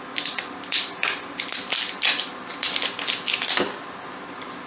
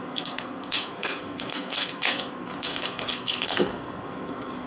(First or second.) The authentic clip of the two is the first